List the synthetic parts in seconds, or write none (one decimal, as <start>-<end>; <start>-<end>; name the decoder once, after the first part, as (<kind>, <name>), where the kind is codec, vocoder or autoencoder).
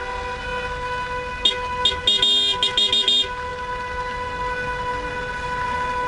none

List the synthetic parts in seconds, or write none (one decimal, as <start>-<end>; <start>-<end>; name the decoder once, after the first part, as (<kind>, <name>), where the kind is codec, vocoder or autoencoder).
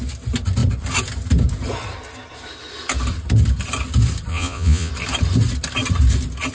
4.3-4.9 (vocoder, Vocos)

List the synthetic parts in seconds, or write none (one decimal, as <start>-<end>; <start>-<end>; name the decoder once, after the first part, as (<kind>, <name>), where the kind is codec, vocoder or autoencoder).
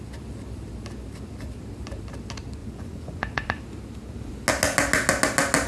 2.6-3.6 (vocoder, Vocos)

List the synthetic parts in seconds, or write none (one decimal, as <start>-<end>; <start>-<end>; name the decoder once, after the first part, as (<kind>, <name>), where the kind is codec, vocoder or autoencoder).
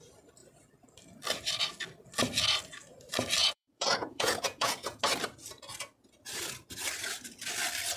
3.4-5.0 (vocoder, Vocos)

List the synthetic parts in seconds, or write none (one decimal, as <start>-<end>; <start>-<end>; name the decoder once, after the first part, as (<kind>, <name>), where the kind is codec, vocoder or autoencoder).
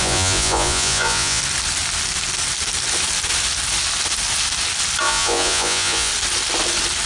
0.0-1.4 (vocoder, Vocos); 5.0-6.1